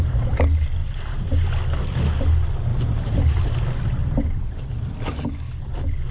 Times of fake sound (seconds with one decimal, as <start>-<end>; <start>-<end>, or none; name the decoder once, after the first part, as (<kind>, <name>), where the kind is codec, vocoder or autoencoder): 0.8-1.5 (vocoder, BigVGAN v2); 2.7-3.4